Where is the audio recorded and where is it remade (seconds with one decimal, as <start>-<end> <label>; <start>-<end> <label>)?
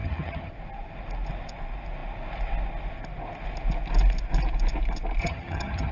0.0-0.5 remade; 0.5-5.2 recorded; 5.2-5.9 remade